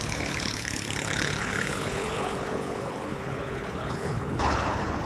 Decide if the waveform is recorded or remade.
remade